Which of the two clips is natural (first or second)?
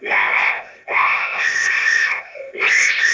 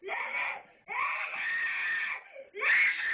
second